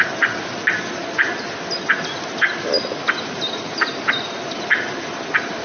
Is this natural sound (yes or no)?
yes